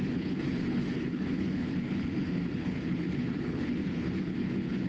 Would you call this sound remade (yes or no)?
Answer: yes